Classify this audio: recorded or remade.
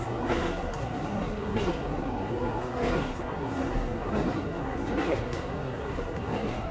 remade